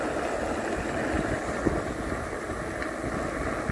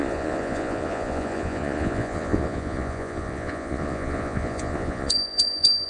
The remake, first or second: second